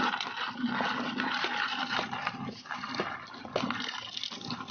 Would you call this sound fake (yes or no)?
no